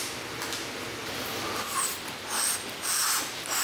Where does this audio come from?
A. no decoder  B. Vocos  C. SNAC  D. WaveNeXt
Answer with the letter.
A